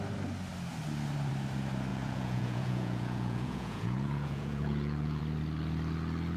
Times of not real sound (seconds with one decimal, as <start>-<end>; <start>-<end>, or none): 1.9-5.2